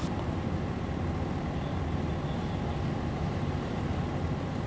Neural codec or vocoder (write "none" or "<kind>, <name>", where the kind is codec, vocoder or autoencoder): none